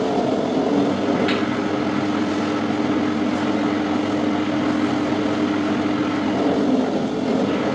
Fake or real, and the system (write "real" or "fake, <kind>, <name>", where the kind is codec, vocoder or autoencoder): real